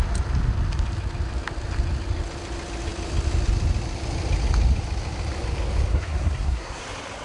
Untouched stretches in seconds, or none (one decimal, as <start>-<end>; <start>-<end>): 0.0-5.9; 6.8-7.2

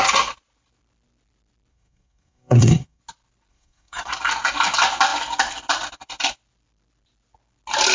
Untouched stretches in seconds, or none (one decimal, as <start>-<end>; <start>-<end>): 0.0-1.7; 3.0-3.5; 4.1-7.9

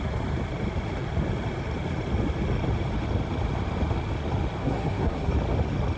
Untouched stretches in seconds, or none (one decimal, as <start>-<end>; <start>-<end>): 0.0-4.6; 5.3-6.0

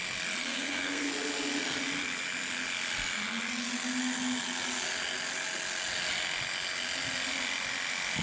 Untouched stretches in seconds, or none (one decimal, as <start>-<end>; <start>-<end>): 0.0-0.4; 1.1-8.2

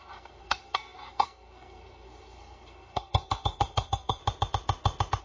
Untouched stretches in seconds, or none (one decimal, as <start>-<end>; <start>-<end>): 4.2-5.2

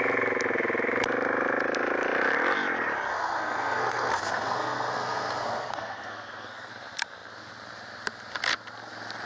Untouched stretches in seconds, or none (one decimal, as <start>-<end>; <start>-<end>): 0.0-3.1; 6.7-9.3

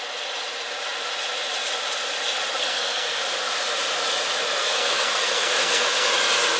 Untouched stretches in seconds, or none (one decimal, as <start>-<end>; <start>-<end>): 0.0-2.6; 3.2-4.6; 6.1-6.6